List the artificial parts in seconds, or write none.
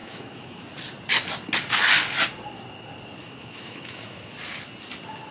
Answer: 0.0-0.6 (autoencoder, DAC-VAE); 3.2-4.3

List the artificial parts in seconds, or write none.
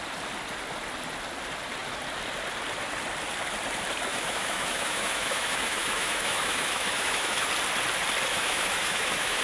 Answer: 4.1-7.5 (autoencoder, DAC-VAE); 8.3-9.4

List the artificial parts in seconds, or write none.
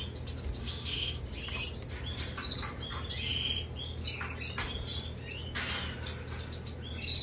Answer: 0.6-1.2 (autoencoder, DAC-VAE)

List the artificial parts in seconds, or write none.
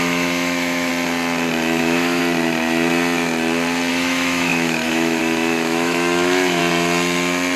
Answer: 0.0-0.9 (autoencoder, DAC-VAE); 1.8-2.2; 3.9-6.6